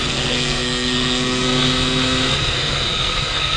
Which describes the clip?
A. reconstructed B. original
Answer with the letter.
A